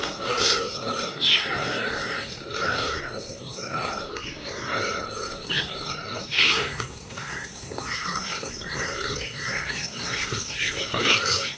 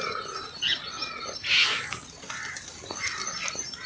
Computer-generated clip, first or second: first